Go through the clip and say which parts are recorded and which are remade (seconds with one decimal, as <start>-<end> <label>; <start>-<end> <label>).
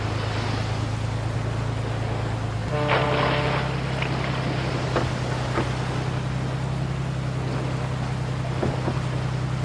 0.0-9.6 recorded